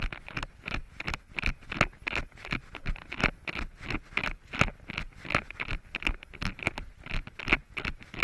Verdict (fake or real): real